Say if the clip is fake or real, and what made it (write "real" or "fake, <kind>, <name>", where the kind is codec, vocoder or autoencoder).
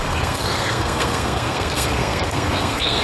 fake, codec, SNAC